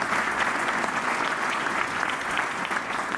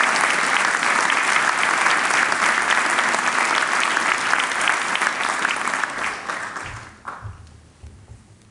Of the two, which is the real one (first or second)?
second